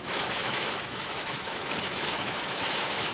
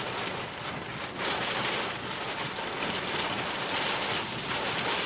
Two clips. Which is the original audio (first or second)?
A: second